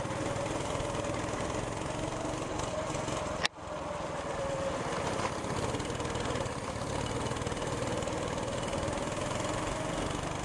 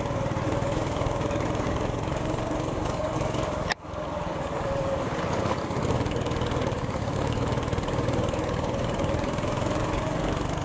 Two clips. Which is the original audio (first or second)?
first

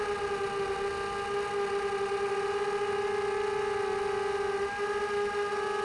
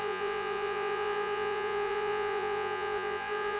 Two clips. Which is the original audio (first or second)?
first